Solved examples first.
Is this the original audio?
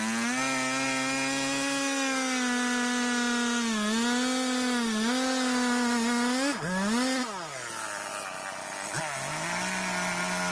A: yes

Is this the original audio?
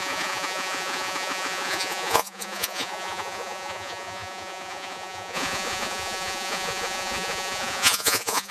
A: no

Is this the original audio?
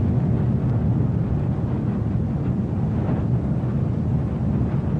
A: yes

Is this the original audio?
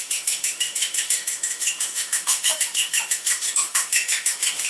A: no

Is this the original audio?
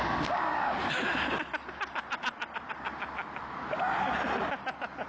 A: yes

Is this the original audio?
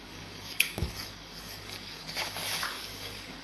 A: no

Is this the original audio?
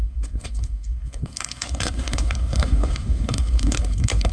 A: no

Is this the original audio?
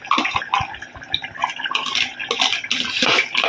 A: yes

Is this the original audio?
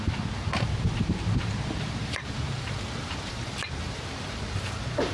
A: no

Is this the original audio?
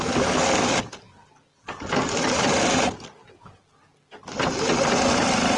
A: yes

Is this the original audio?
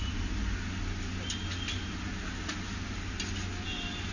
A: yes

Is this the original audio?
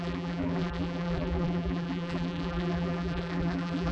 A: no